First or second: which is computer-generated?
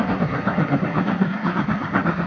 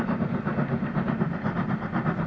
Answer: first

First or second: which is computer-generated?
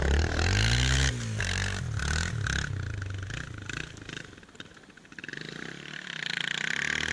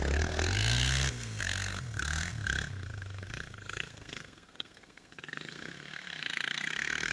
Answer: second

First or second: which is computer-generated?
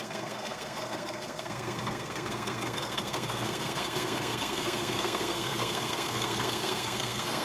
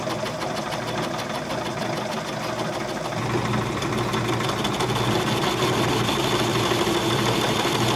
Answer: first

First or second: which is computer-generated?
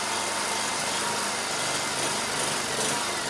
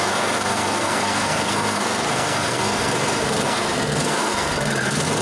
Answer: second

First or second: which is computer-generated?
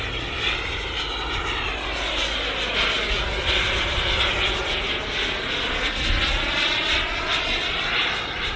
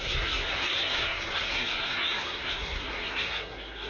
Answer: second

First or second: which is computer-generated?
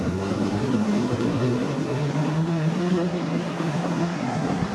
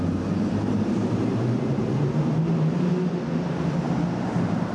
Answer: first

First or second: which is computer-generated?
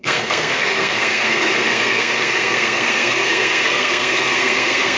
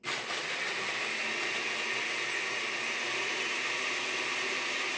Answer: first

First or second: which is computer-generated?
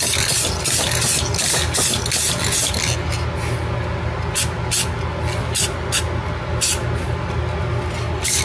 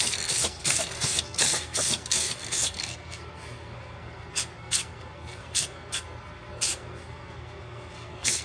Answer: second